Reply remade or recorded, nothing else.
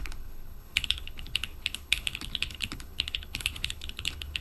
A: remade